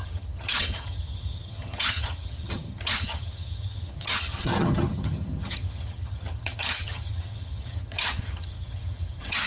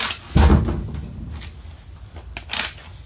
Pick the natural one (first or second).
second